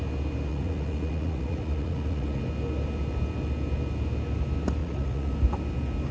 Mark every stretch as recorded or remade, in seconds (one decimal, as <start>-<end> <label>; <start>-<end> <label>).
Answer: 0.0-0.5 recorded; 0.5-2.4 remade; 2.4-4.8 recorded; 4.8-5.3 remade; 5.3-6.1 recorded